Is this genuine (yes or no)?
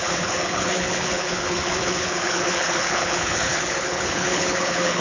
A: no